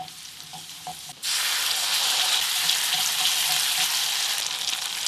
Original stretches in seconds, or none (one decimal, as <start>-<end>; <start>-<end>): 0.0-0.5; 1.1-5.1